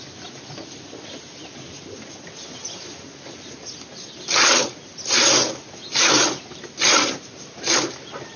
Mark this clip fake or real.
real